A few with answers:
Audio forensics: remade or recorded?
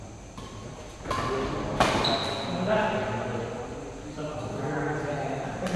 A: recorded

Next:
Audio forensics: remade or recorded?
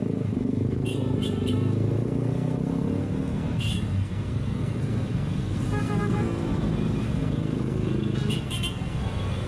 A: remade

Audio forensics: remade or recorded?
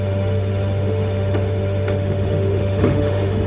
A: remade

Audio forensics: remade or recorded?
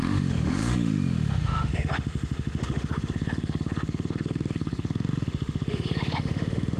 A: remade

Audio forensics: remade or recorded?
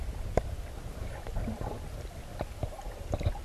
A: recorded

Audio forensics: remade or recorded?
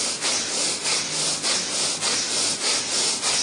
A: recorded